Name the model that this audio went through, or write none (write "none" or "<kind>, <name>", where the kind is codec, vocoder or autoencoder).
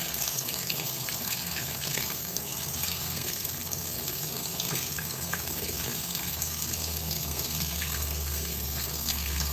codec, SNAC